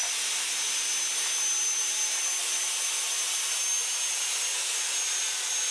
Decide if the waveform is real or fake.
real